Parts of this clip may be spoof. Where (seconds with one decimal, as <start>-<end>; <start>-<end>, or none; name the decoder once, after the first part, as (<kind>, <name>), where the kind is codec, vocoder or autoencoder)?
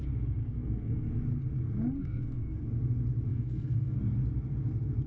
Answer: 0.4-1.1 (codec, SNAC); 2.0-2.6; 3.3-4.0